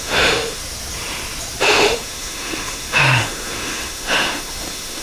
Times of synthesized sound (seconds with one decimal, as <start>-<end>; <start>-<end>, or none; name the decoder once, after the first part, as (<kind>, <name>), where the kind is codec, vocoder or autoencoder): 0.0-0.6 (autoencoder, DAC-VAE); 1.6-5.0